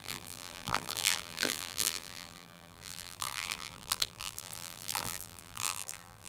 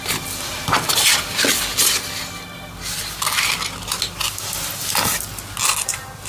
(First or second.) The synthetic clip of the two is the first